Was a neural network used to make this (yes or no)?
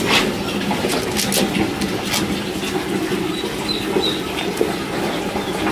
no